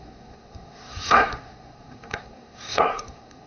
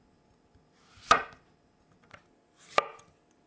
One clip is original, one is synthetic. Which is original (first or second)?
second